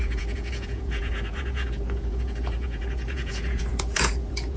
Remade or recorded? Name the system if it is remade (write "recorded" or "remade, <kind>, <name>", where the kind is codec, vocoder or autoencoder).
remade, vocoder, Vocos